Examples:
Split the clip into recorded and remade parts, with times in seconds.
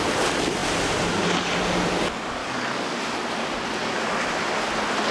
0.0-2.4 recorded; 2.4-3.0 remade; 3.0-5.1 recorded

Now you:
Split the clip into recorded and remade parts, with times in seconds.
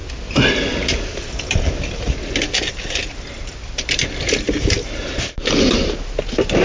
0.0-6.6 recorded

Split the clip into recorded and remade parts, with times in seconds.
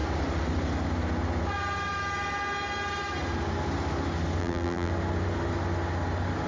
0.0-4.4 recorded; 4.4-4.9 remade; 4.9-6.5 recorded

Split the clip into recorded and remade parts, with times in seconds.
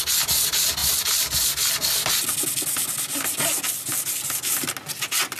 0.0-5.4 recorded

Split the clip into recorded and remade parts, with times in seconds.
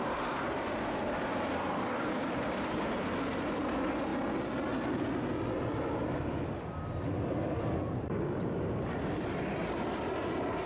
0.0-4.1 remade; 4.1-9.0 recorded; 9.0-10.7 remade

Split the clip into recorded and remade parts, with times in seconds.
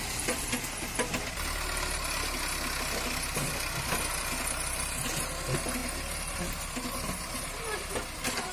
0.0-8.5 recorded